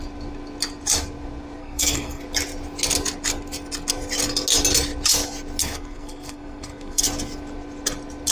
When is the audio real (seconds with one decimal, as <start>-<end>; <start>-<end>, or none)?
0.0-1.6; 2.2-5.6; 7.0-8.3